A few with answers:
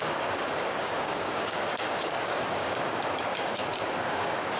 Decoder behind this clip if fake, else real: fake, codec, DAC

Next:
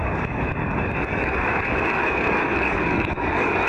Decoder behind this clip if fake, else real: fake, codec, DAC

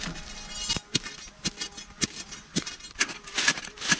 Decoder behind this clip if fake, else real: real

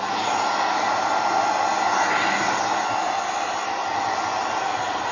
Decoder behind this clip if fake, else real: real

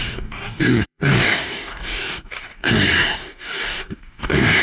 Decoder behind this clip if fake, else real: fake, codec, DAC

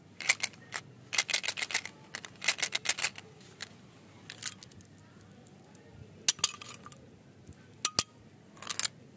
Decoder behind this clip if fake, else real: real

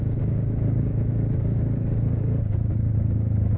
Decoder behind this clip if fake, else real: fake, codec, DAC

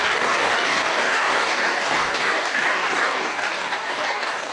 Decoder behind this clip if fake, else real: fake, codec, DAC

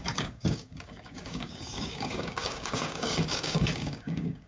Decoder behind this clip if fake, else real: fake, codec, DAC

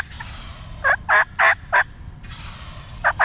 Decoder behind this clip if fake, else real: real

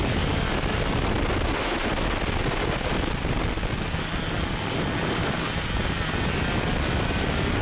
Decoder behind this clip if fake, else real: real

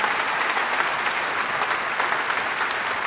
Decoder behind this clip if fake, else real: real